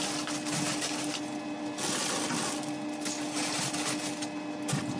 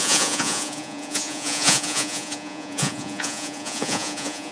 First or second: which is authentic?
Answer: first